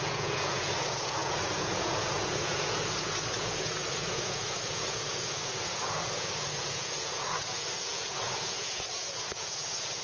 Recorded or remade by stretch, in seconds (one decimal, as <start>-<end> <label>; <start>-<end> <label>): 0.0-10.0 remade